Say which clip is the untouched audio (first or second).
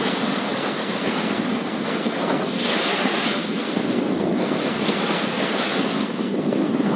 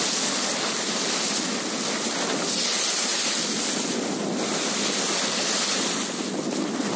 second